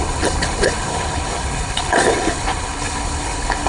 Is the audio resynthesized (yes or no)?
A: yes